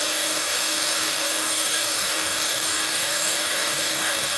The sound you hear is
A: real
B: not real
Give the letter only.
B